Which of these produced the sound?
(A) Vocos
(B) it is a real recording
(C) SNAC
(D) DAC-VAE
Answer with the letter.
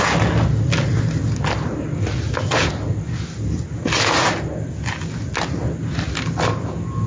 B